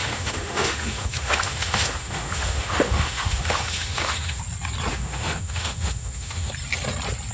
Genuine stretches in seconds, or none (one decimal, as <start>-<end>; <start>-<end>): 4.4-4.9; 6.5-7.3